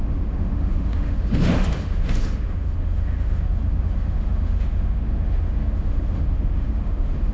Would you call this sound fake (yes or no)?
yes